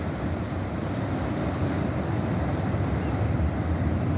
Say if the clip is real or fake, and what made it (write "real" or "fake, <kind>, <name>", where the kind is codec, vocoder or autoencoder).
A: real